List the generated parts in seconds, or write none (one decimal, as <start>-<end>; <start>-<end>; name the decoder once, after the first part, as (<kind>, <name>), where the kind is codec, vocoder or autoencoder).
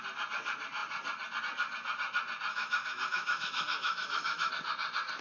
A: 2.5-4.5 (autoencoder, DAC-VAE)